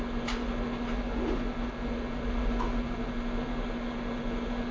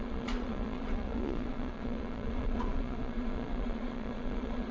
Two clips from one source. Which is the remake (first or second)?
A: second